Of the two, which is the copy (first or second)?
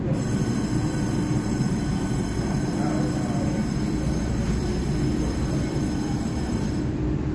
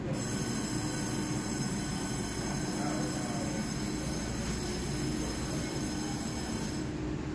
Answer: first